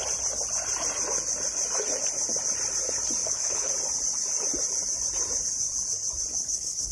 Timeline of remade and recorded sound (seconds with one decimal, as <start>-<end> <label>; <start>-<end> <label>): 0.0-3.2 recorded; 3.2-3.7 remade; 3.7-6.3 recorded; 6.3-6.9 remade